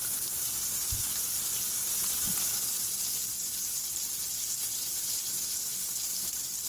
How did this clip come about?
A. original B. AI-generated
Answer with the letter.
B